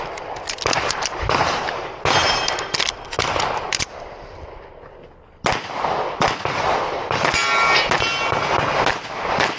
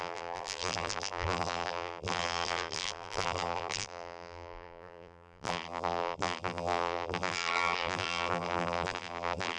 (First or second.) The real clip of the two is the first